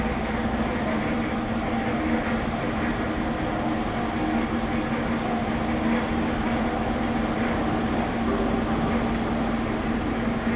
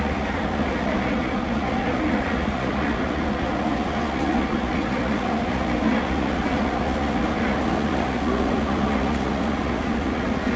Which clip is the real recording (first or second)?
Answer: first